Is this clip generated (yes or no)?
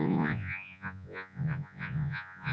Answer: yes